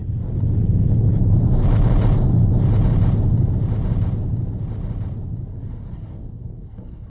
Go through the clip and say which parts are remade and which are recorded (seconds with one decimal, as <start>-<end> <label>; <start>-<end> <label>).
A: 0.0-5.5 recorded; 5.5-7.1 remade